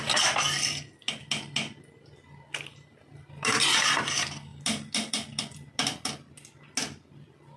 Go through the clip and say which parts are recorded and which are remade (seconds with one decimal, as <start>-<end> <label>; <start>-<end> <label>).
0.0-7.6 recorded